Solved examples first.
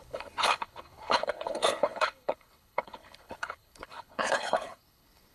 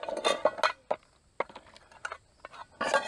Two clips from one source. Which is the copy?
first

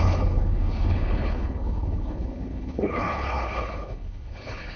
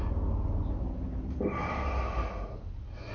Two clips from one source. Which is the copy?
first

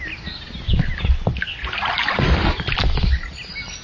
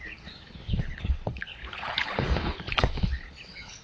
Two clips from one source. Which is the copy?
second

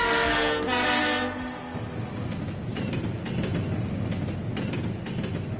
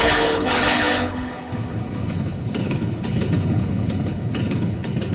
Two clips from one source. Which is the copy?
second